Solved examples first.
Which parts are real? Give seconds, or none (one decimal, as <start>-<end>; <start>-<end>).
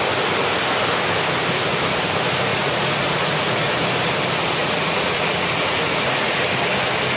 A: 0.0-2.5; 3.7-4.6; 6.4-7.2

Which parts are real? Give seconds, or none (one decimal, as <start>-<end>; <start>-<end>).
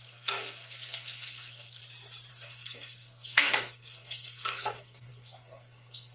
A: 1.8-2.3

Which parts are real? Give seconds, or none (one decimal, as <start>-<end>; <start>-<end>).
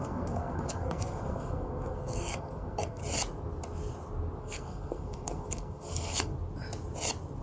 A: 3.0-4.4; 6.3-7.4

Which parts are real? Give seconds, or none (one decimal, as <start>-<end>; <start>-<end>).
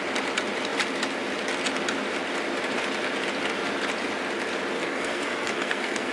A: 0.0-4.8